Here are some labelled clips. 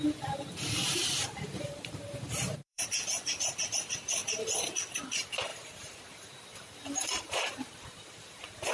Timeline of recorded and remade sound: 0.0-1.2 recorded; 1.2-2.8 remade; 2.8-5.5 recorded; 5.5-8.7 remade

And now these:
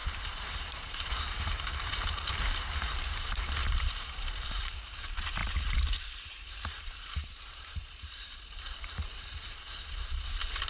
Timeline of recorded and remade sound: 0.0-5.4 remade; 5.4-6.3 recorded; 6.3-10.7 remade

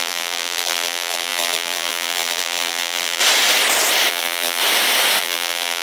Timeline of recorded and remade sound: 0.0-3.2 remade; 3.2-4.1 recorded; 4.1-4.6 remade; 4.6-5.2 recorded; 5.2-5.8 remade